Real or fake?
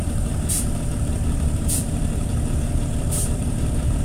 fake